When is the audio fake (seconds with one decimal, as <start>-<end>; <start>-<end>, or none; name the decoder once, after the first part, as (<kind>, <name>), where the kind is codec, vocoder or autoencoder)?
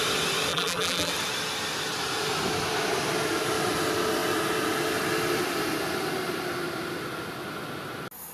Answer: 0.5-1.1 (vocoder, BigVGAN v2)